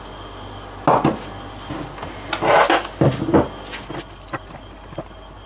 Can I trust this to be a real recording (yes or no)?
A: yes